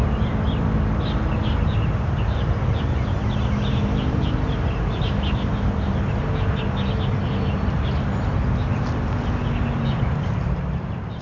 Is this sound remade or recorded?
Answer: recorded